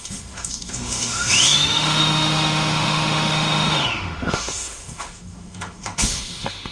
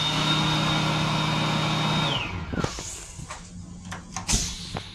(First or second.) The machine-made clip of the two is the first